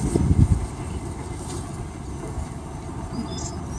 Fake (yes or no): no